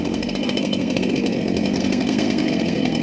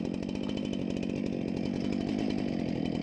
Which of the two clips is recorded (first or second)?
second